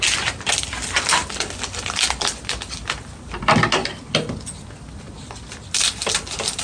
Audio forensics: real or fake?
real